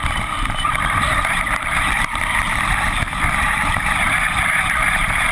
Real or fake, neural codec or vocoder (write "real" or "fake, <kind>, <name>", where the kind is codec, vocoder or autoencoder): fake, vocoder, BigVGAN v2